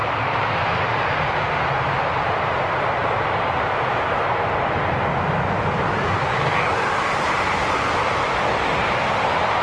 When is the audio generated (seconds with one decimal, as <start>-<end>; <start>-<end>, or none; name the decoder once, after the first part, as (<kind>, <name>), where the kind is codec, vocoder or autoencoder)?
0.0-1.2 (vocoder, BigVGAN v2); 3.0-4.2